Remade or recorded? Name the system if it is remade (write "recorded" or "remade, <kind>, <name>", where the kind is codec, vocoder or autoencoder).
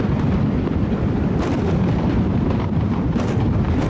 recorded